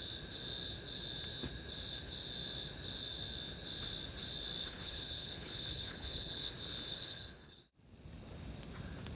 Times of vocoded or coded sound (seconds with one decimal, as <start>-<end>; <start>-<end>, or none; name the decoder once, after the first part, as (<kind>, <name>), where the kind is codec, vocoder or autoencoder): 4.6-6.5 (codec, HILCodec); 6.9-7.6